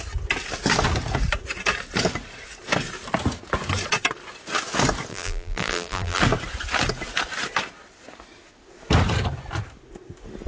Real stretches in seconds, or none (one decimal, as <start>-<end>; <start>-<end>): 0.0-5.1; 6.2-10.5